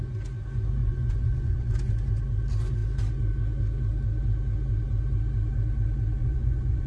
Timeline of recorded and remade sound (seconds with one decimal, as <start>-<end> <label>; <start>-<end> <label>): 0.0-0.8 recorded; 0.8-1.9 remade; 1.9-6.2 recorded; 6.2-6.9 remade